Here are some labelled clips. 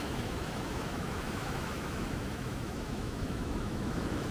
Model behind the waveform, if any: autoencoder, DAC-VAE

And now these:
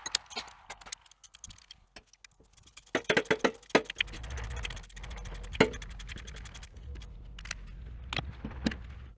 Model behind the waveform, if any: none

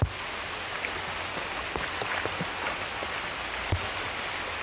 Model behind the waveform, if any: none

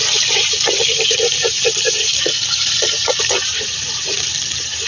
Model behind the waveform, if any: none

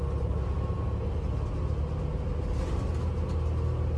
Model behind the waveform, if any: none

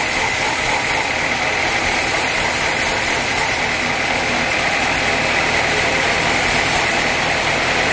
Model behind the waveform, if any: vocoder, BigVGAN v2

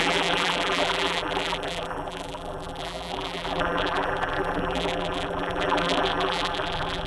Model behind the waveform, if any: vocoder, BigVGAN v2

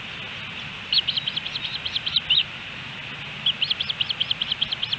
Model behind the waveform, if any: none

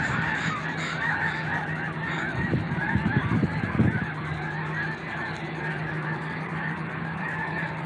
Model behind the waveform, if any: codec, DAC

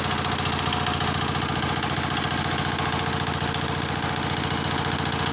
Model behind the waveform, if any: none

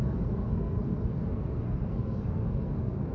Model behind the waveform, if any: codec, SNAC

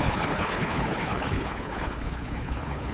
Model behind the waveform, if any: codec, HILCodec